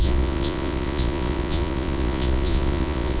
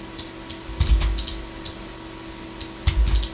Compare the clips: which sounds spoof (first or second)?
first